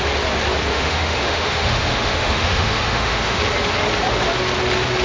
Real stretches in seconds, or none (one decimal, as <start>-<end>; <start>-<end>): 0.0-0.7; 3.4-5.0